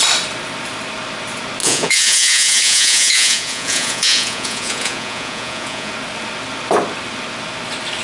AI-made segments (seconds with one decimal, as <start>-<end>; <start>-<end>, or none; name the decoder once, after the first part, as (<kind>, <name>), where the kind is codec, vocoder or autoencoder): 1.6-5.9 (vocoder, Vocos)